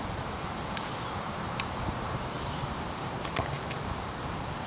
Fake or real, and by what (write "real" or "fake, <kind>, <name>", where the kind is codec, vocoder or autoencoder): fake, vocoder, BigVGAN v2